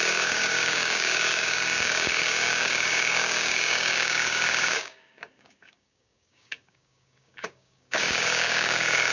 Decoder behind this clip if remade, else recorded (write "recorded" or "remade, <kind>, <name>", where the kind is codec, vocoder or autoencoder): remade, codec, DAC